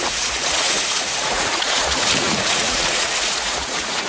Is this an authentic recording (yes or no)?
no